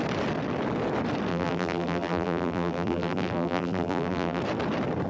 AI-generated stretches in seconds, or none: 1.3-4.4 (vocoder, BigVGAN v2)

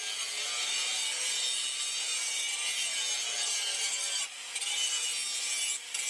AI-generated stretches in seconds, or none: none

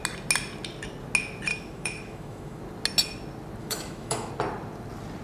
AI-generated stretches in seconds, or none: 1.5-2.6 (autoencoder, DAC-VAE); 3.6-4.3

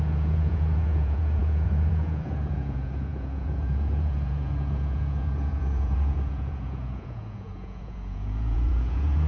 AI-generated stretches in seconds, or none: 0.0-9.3 (vocoder, Vocos)

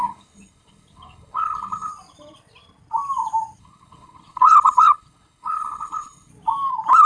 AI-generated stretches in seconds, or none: 0.0-1.9 (codec, HILCodec); 3.6-6.3

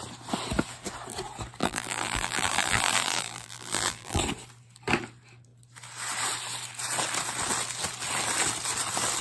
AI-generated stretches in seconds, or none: 1.6-4.2 (vocoder, BigVGAN v2)

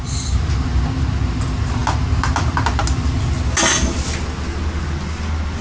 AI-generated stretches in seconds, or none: none

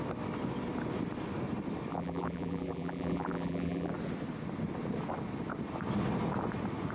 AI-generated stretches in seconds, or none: 1.9-3.9 (vocoder, BigVGAN v2)